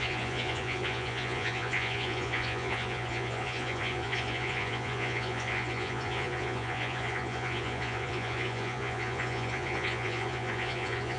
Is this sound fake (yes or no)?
yes